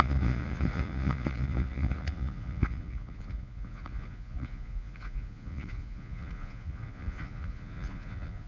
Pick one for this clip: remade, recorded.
remade